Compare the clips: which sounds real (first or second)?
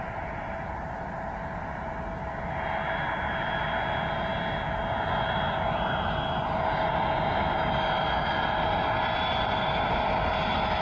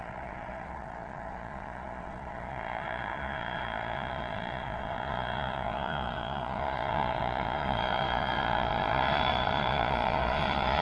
first